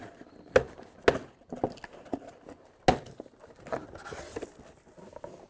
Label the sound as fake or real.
real